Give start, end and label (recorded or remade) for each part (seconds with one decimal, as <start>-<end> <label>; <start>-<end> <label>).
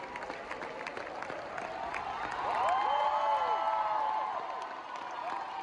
0.0-5.6 recorded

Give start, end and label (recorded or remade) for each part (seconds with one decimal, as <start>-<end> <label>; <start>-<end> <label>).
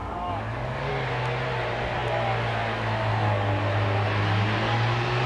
0.0-0.9 remade; 0.9-5.3 recorded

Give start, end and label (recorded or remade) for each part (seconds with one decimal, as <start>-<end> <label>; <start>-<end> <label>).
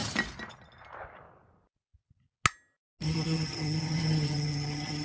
0.0-3.0 recorded; 3.0-5.0 remade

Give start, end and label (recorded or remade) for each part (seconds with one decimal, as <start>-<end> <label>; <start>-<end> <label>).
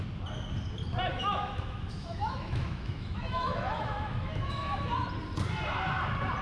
0.0-1.1 recorded; 1.1-4.9 remade; 4.9-6.4 recorded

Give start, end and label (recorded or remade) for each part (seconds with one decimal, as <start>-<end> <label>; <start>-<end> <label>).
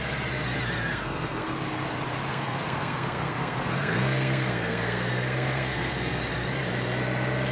0.0-0.9 recorded; 0.9-1.5 remade; 1.5-2.3 recorded; 2.3-6.2 remade; 6.2-7.5 recorded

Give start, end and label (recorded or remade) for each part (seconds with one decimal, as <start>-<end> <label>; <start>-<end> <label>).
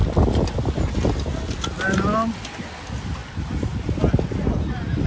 0.0-5.1 recorded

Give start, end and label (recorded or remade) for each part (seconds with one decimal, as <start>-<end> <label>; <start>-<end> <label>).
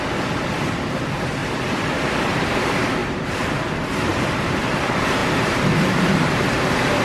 0.0-3.0 recorded; 3.0-3.5 remade; 3.5-4.1 recorded; 4.1-4.7 remade; 4.7-5.2 recorded; 5.2-6.4 remade; 6.4-7.0 recorded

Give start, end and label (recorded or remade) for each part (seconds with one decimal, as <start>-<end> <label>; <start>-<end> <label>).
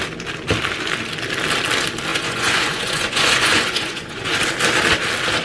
0.0-2.1 recorded; 2.1-4.3 remade; 4.3-5.4 recorded